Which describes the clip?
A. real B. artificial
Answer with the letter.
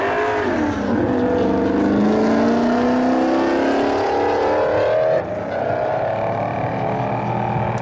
A